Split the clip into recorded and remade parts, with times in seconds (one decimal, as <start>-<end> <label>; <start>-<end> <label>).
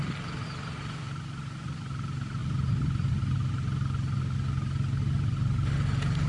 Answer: 0.0-6.3 recorded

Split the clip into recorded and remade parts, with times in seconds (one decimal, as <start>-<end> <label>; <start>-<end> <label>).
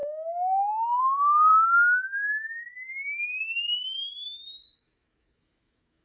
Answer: 0.0-1.5 remade; 1.5-3.4 recorded; 3.4-6.0 remade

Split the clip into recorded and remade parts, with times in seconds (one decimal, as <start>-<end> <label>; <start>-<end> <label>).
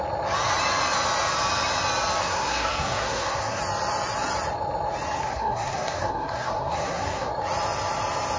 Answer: 0.0-2.2 recorded; 2.2-3.6 remade; 3.6-5.2 recorded; 5.2-7.3 remade; 7.3-8.4 recorded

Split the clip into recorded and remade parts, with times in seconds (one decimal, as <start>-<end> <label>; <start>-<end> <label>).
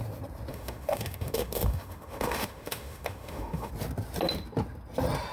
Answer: 0.0-0.5 recorded; 0.5-3.7 remade; 3.7-5.3 recorded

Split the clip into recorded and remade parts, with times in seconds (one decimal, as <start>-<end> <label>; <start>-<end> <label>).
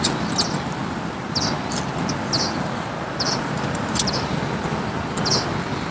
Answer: 0.0-5.9 recorded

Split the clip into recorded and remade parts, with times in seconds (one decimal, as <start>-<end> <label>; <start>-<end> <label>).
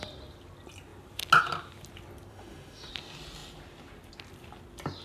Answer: 0.0-2.3 recorded; 2.3-2.9 remade; 2.9-5.0 recorded